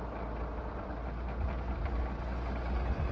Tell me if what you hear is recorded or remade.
recorded